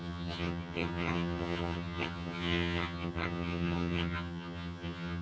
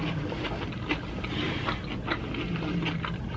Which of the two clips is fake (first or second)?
first